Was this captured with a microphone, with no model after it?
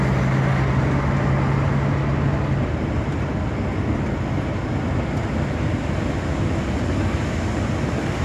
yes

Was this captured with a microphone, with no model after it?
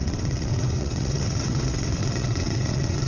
no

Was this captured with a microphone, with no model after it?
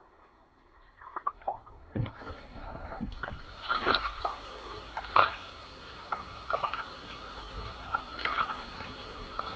no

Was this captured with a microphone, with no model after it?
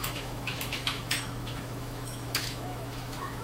no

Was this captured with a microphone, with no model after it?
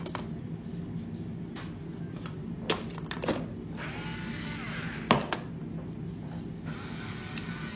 yes